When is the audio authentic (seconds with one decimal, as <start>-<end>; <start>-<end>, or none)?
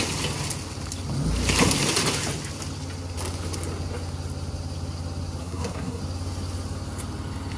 0.0-5.4; 6.0-7.6